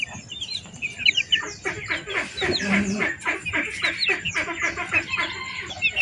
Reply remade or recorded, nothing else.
recorded